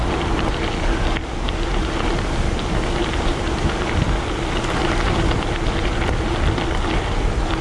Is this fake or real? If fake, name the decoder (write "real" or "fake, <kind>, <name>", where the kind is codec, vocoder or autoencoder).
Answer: real